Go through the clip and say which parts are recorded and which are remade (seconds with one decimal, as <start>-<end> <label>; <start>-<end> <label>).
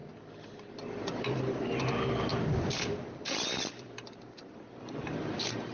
0.0-2.3 recorded; 2.3-4.7 remade; 4.7-5.7 recorded